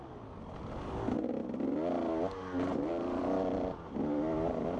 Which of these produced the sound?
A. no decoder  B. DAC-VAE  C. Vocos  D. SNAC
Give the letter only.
A